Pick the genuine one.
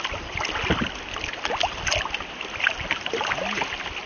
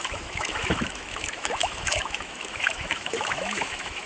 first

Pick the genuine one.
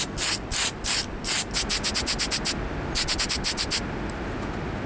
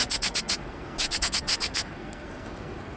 first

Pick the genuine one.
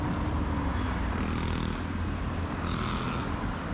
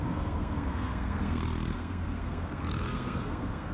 first